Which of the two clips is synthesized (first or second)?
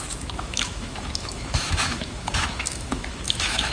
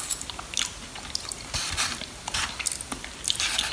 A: first